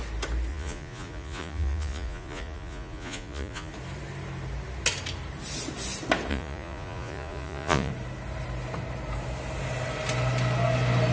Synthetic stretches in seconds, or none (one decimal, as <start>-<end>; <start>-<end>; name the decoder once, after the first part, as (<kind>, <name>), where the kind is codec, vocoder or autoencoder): 0.5-3.7 (vocoder, Vocos); 6.3-7.9